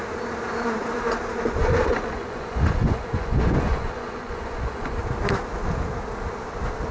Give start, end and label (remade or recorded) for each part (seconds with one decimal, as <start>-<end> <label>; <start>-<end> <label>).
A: 0.0-1.6 recorded; 1.6-5.0 remade; 5.0-6.9 recorded